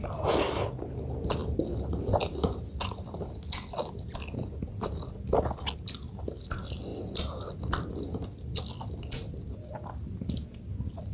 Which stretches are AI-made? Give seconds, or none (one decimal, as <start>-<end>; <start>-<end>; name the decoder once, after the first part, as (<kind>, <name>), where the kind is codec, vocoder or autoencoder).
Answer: 1.4-3.3 (vocoder, BigVGAN v2)